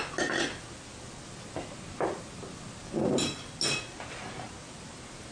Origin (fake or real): real